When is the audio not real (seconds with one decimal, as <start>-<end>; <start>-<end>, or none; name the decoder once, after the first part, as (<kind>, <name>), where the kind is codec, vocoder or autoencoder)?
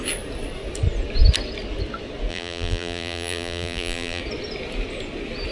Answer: 2.3-4.2 (vocoder, BigVGAN v2)